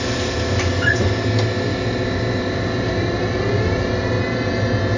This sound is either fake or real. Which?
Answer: real